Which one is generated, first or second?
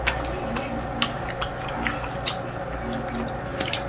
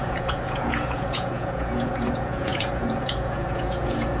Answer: second